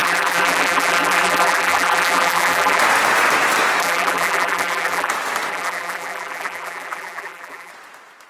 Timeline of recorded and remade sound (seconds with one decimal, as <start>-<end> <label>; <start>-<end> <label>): 0.0-2.8 remade; 2.8-3.8 recorded; 3.8-5.1 remade; 5.1-5.5 recorded; 5.5-7.7 remade; 7.7-8.3 recorded